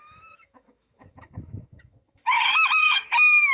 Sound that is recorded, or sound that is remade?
remade